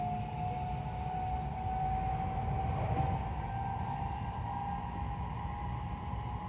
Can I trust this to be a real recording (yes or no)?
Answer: yes